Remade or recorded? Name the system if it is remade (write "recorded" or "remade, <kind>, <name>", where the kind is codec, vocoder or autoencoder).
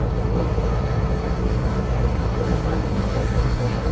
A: remade, codec, SNAC